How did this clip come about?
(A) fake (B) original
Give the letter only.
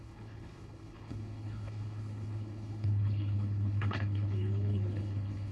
A